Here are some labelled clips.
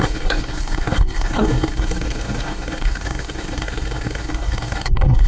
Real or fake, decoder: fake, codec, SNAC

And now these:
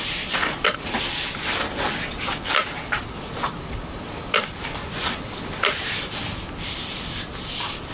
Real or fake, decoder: real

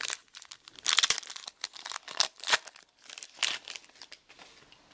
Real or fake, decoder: real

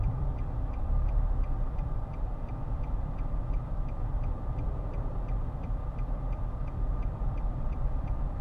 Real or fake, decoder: fake, vocoder, BigVGAN v2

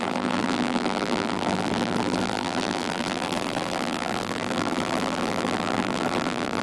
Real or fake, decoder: fake, vocoder, BigVGAN v2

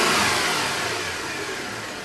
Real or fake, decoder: real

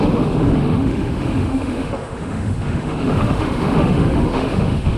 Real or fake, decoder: fake, autoencoder, DAC-VAE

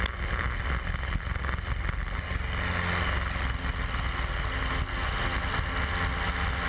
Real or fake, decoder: real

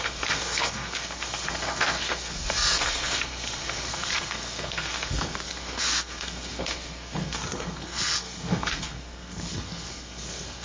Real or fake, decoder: fake, codec, SNAC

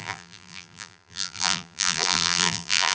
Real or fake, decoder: fake, vocoder, BigVGAN v2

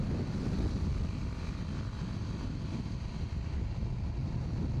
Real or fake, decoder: real